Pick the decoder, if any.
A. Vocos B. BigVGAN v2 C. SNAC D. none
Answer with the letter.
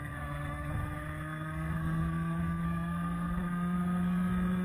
C